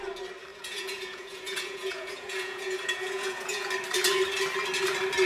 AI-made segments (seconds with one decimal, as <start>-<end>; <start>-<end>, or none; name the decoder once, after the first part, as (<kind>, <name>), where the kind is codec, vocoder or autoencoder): 0.5-3.7 (vocoder, Vocos)